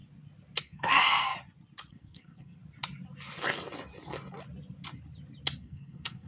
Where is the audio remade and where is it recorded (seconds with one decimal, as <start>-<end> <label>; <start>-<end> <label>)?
0.0-0.6 recorded; 0.6-1.3 remade; 1.3-1.9 recorded; 1.9-2.6 remade; 2.6-5.6 recorded; 5.6-6.3 remade